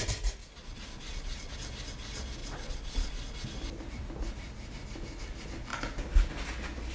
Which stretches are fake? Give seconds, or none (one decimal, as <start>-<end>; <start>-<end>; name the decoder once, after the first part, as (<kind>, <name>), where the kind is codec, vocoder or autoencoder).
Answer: 0.4-1.5 (vocoder, Vocos); 2.4-3.2